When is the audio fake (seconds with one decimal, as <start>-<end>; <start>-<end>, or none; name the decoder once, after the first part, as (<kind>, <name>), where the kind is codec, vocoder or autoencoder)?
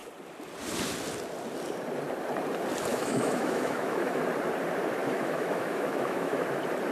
2.9-4.2 (autoencoder, DAC-VAE); 5.0-6.4